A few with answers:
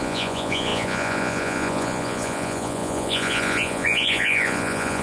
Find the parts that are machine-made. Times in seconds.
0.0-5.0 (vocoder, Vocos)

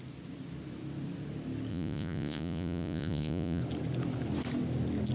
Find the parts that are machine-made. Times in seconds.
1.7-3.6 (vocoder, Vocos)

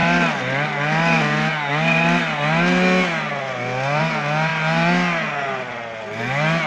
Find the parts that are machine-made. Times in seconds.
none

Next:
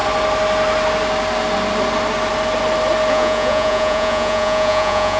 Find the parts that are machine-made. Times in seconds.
3.1-5.2 (vocoder, Vocos)

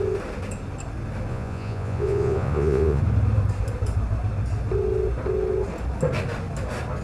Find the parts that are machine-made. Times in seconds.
1.3-3.0 (vocoder, Vocos)

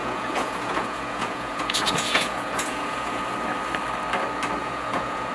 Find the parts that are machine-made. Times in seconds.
0.0-3.2 (vocoder, Vocos); 4.6-5.3

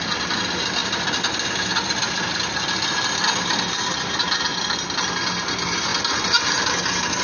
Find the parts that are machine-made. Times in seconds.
none